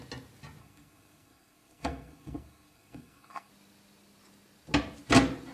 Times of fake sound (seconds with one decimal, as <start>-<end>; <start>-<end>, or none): 0.6-3.5